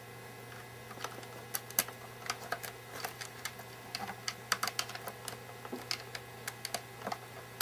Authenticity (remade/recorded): recorded